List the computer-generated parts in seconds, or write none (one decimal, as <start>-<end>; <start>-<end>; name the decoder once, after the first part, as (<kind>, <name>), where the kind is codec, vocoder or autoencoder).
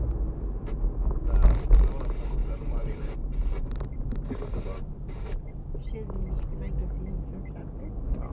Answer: 2.4-5.2 (vocoder, BigVGAN v2); 6.8-7.9